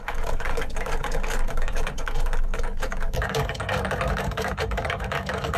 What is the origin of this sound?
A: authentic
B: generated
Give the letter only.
B